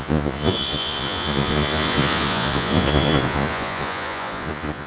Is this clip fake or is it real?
fake